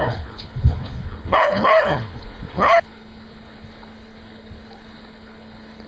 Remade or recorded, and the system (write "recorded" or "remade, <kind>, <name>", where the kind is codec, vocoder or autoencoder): remade, codec, HILCodec